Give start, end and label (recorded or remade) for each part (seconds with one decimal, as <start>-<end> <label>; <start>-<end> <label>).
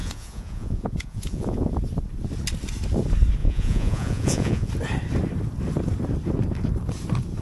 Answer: 0.0-1.7 remade; 1.7-3.4 recorded; 3.4-4.7 remade; 4.7-7.4 recorded